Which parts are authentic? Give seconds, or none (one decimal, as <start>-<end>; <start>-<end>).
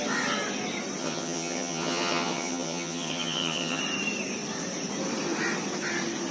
0.0-1.0; 3.8-6.3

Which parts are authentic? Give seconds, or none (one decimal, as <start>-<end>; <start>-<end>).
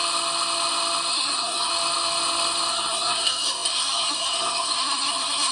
0.0-1.1; 1.7-2.7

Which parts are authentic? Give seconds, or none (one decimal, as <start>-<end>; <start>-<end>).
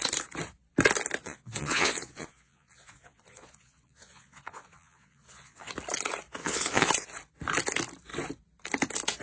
0.0-1.2; 5.7-6.4; 6.9-9.2